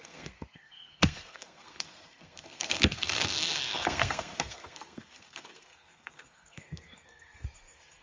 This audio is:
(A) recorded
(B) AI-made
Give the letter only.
B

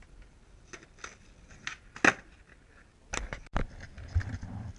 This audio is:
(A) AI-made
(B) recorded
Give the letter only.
B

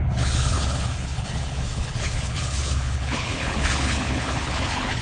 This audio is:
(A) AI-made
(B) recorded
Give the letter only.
A